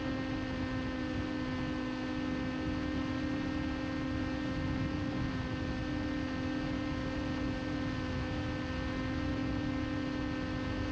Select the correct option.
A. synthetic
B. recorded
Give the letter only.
B